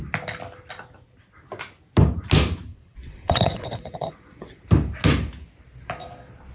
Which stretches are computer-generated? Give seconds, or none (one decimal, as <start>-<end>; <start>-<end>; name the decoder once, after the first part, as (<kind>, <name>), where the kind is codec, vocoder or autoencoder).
2.7-4.6 (vocoder, WaveNeXt)